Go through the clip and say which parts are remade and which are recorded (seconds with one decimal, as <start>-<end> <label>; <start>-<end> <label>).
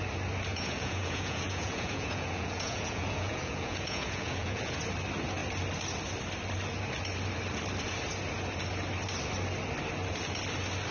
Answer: 0.0-0.5 recorded; 0.5-4.8 remade; 4.8-10.9 recorded